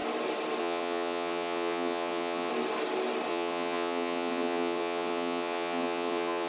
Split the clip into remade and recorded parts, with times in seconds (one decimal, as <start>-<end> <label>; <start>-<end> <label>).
0.0-0.6 recorded; 0.6-2.5 remade; 2.5-3.3 recorded; 3.3-6.5 remade